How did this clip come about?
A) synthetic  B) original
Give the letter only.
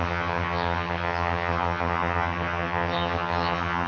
A